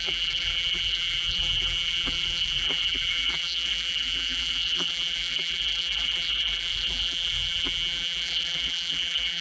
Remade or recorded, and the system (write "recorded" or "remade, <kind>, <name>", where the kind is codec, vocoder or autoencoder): remade, vocoder, BigVGAN v2